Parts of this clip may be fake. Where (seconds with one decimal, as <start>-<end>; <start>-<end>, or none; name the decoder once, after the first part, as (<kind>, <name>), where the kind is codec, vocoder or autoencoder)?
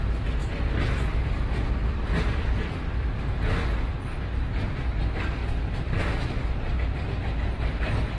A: 0.4-3.2 (vocoder, BigVGAN v2); 5.4-8.2